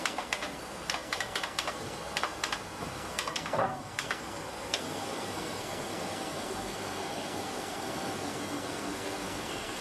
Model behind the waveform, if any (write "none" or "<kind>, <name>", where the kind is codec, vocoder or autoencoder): codec, SNAC